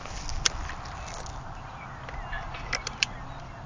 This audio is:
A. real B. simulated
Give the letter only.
A